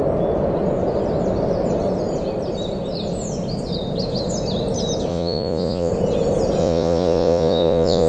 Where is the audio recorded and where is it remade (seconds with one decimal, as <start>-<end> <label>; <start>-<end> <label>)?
0.0-5.1 recorded; 5.1-5.9 remade; 5.9-6.6 recorded; 6.6-8.1 remade